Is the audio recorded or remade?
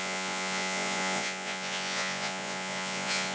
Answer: remade